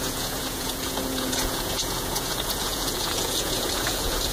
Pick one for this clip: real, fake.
fake